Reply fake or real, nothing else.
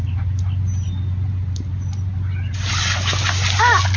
real